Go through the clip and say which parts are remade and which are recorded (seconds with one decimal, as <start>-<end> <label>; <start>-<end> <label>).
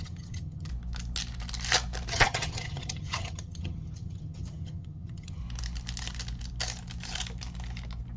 0.0-0.7 remade; 0.7-2.1 recorded; 2.1-5.4 remade; 5.4-8.2 recorded